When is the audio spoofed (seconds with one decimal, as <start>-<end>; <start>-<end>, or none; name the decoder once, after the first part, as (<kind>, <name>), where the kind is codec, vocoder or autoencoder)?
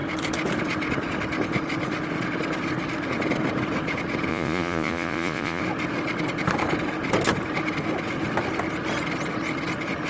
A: 4.3-5.6 (vocoder, Vocos)